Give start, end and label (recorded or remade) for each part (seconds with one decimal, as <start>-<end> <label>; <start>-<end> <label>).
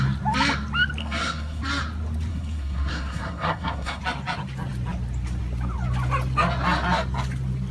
0.0-1.0 recorded; 1.0-1.6 remade; 1.6-2.3 recorded; 2.3-4.0 remade; 4.0-7.7 recorded